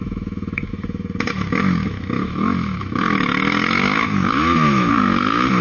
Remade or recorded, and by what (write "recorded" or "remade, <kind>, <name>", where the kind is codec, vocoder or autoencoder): remade, autoencoder, DAC-VAE